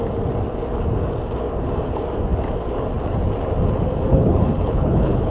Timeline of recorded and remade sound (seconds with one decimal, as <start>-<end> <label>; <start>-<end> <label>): 0.0-4.1 recorded; 4.1-5.3 remade

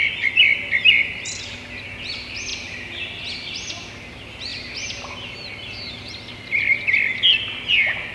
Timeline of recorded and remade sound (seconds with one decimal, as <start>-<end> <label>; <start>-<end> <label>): 0.0-8.1 recorded

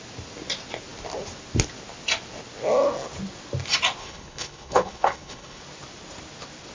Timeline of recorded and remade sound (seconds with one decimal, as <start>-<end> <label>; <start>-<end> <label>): 0.0-4.0 recorded; 4.0-5.6 remade; 5.6-6.7 recorded